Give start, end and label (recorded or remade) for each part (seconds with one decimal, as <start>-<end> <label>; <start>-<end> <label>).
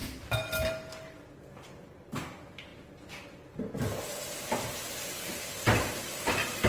0.0-0.7 recorded; 0.7-6.7 remade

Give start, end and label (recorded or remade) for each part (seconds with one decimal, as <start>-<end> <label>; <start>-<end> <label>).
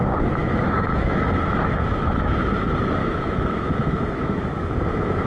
0.0-0.4 recorded; 0.4-2.4 remade; 2.4-3.0 recorded; 3.0-5.3 remade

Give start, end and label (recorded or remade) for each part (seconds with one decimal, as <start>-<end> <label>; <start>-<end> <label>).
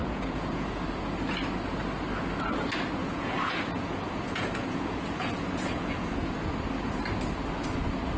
0.0-0.8 remade; 0.8-3.0 recorded; 3.0-6.2 remade; 6.2-8.2 recorded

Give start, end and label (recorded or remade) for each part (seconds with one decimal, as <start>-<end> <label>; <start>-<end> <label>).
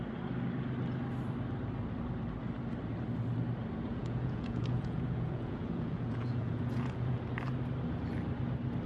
0.0-3.9 recorded; 3.9-7.2 remade; 7.2-8.9 recorded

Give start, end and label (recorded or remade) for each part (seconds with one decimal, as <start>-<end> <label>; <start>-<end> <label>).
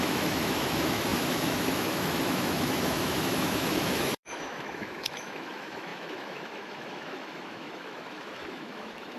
0.0-9.2 remade